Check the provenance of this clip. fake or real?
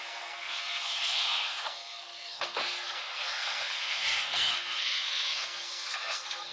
fake